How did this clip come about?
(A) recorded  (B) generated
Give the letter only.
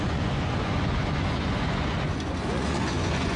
B